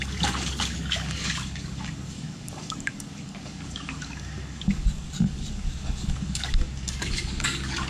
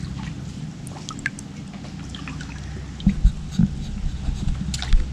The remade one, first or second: first